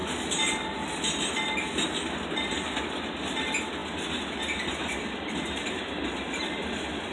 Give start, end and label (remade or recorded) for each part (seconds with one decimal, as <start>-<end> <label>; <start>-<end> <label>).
0.0-7.1 recorded